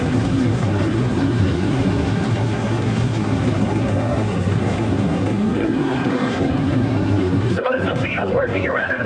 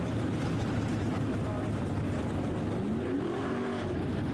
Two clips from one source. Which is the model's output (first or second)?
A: first